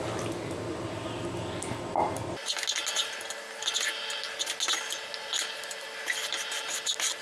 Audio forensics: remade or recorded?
recorded